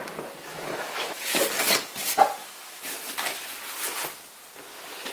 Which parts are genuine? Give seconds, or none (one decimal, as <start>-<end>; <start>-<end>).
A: 0.0-0.5; 1.4-2.4; 3.1-5.1